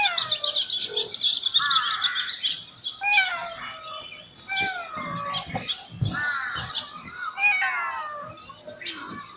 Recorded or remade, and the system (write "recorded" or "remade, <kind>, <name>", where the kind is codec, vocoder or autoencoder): recorded